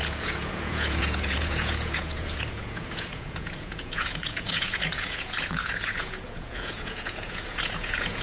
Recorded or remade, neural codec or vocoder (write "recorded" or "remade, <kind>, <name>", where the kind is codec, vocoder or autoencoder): remade, vocoder, Vocos